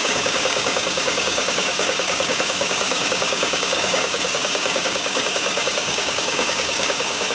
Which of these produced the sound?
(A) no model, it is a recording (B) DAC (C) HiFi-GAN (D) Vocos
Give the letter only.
B